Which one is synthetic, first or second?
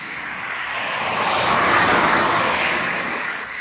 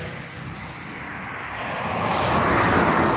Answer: first